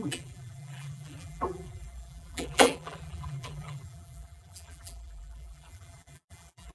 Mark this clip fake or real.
fake